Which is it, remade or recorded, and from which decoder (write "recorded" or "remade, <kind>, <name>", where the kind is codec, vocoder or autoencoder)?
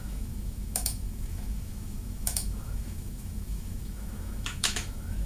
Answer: remade, autoencoder, DAC-VAE